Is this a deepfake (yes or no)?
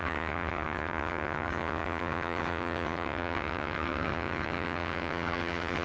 yes